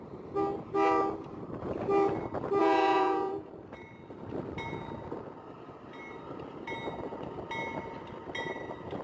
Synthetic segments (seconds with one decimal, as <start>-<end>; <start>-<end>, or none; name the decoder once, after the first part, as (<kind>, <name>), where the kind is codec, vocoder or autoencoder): 2.6-3.5 (vocoder, Vocos)